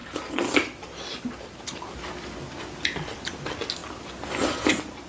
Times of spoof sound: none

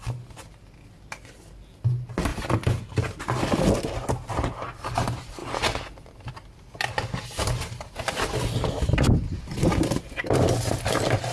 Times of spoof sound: none

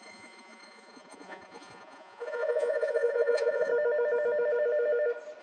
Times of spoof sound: 0.0-3.7 (vocoder, Vocos)